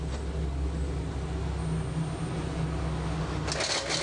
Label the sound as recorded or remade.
recorded